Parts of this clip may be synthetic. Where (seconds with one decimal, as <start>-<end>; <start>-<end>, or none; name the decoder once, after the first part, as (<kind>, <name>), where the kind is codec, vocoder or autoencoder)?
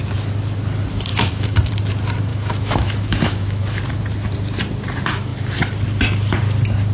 1.1-1.7 (autoencoder, DAC-VAE); 2.3-3.8